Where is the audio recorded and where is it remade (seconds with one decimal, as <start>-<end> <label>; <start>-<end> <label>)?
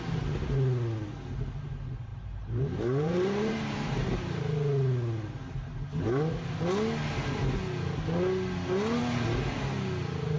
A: 0.0-2.1 recorded; 2.1-4.4 remade; 4.4-10.4 recorded